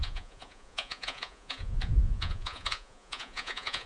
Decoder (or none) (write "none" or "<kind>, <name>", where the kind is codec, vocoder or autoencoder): vocoder, Vocos